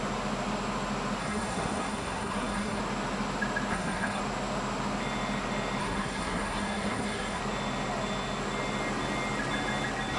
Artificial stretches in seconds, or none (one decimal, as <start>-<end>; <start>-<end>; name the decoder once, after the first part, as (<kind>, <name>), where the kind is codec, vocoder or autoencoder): 1.2-2.8 (codec, SNAC); 3.7-4.2; 5.8-7.4